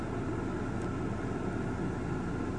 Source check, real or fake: real